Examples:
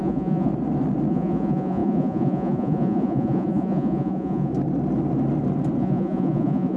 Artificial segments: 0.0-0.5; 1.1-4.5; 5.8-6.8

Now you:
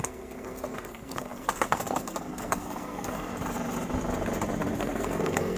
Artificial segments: 0.0-3.3; 4.8-5.6

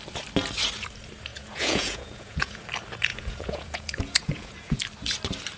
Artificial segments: 1.3-2.6; 3.1-4.8

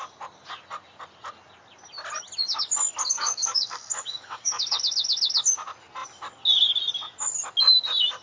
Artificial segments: 3.1-4.8

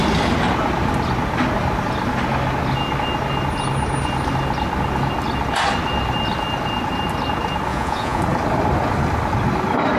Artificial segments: 7.7-8.2

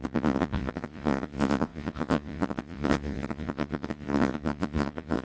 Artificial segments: 0.0-5.2